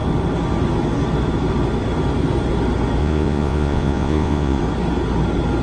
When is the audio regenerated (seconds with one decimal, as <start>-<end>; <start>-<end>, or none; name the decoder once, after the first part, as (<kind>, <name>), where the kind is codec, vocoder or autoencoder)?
3.0-4.6 (vocoder, Vocos)